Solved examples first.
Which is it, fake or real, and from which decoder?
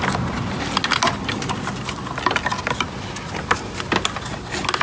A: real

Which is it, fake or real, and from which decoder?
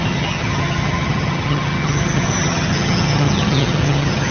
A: fake, vocoder, HiFi-GAN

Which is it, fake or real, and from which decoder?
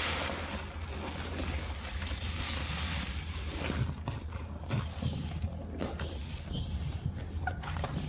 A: real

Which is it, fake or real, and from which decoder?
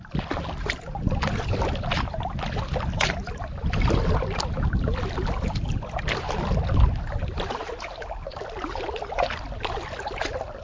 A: real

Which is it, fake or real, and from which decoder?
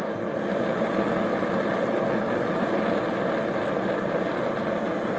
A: real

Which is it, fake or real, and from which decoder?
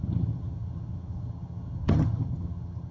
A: fake, vocoder, HiFi-GAN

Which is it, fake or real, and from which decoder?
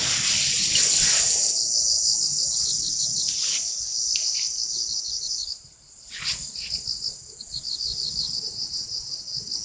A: real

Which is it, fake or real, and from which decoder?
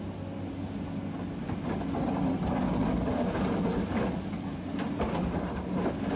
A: real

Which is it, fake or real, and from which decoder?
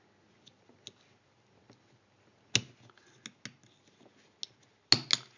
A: real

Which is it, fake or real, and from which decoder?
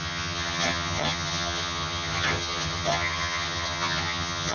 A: fake, vocoder, HiFi-GAN